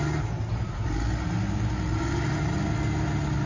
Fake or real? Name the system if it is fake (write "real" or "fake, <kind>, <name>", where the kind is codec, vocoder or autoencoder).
real